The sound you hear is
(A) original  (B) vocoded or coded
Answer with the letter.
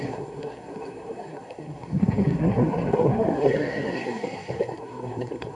B